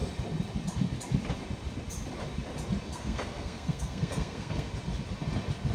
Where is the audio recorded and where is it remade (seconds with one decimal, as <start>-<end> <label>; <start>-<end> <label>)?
0.0-2.9 recorded; 2.9-4.7 remade; 4.7-5.7 recorded